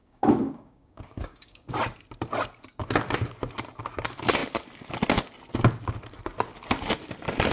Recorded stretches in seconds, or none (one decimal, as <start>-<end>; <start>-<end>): 1.7-7.5